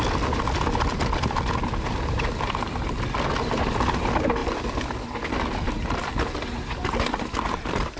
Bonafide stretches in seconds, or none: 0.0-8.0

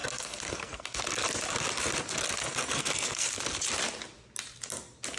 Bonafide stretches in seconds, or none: 1.0-2.4; 3.3-5.2

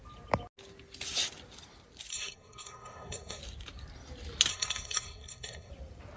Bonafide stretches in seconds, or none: 0.0-2.1; 3.4-4.5; 5.7-6.2

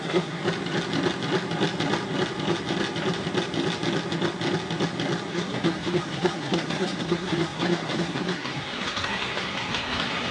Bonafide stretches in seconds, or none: 0.4-5.3

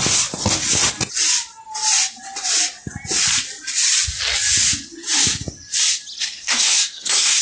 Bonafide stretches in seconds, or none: 0.0-6.2

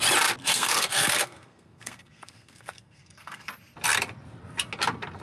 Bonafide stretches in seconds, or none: 0.0-0.4; 3.5-5.2